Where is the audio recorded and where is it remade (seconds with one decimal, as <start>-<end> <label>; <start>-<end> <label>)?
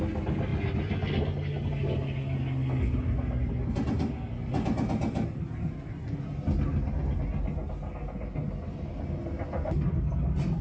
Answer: 0.0-10.6 recorded